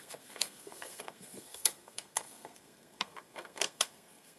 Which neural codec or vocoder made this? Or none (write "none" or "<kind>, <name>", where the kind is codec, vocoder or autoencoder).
codec, SNAC